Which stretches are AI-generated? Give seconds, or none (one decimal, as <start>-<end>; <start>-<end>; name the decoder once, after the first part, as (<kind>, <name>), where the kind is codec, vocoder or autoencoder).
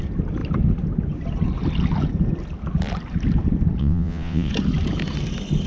3.8-4.5 (vocoder, WaveNeXt)